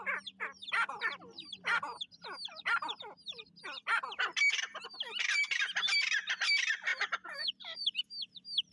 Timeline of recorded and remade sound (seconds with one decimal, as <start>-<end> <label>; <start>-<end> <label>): 0.0-6.9 recorded; 6.9-8.1 remade; 8.1-8.7 recorded